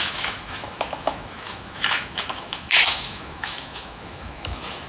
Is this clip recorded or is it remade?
remade